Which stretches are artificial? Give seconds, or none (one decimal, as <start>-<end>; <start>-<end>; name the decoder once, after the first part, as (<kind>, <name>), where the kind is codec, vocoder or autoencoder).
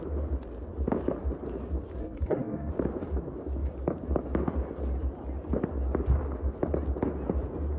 2.0-2.7 (codec, SNAC)